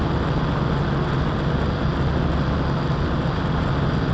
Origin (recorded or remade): recorded